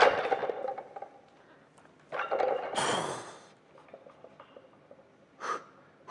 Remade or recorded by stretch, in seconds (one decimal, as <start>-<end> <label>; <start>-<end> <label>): 0.0-6.1 recorded